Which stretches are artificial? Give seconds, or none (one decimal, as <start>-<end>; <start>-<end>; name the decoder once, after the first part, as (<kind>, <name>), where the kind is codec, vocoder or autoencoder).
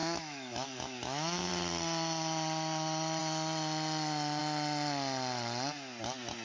0.0-1.5 (autoencoder, DAC-VAE)